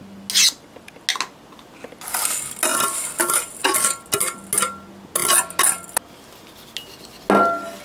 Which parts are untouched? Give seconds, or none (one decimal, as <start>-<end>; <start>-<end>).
0.0-7.8